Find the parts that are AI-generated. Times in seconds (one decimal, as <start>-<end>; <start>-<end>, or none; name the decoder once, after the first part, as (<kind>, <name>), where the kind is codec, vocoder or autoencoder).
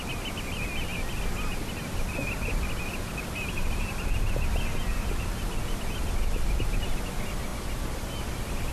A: none